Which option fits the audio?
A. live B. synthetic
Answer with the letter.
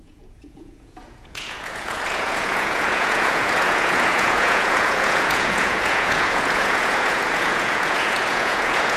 B